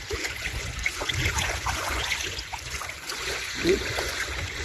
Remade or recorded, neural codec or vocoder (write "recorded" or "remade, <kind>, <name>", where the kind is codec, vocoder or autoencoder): remade, vocoder, Vocos